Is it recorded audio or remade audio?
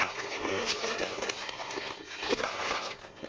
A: remade